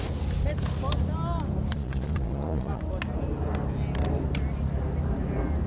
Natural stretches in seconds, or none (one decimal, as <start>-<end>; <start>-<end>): 0.0-1.7; 2.8-5.7